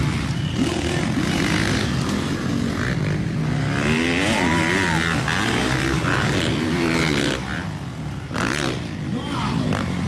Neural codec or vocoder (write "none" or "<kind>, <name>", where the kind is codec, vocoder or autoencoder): none